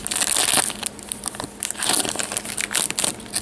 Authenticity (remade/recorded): recorded